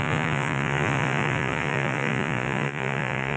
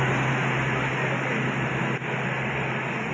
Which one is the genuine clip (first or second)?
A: second